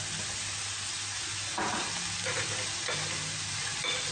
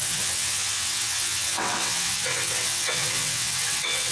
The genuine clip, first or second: first